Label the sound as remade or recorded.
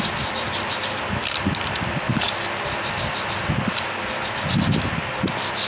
recorded